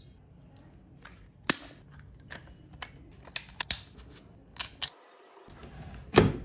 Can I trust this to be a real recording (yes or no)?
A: yes